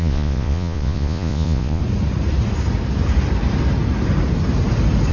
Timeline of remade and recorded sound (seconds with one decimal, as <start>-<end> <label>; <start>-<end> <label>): 0.0-1.8 remade; 1.8-5.1 recorded